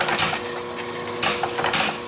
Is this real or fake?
real